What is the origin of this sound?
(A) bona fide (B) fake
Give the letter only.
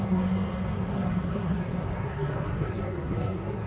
B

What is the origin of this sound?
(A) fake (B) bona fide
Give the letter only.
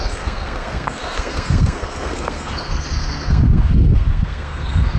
A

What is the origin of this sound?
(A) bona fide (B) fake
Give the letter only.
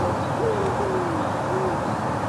A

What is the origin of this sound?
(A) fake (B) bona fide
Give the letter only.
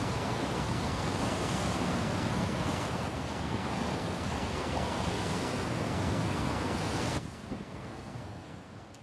A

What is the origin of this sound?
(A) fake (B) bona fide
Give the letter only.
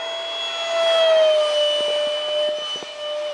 B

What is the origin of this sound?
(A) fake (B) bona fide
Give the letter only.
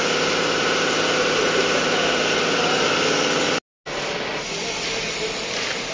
B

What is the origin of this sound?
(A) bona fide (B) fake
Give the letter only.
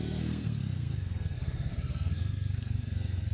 B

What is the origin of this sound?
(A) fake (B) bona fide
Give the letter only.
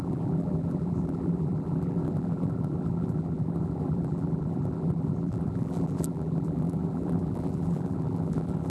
A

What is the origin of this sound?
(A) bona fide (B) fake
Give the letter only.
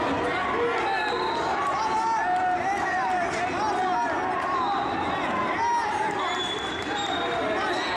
A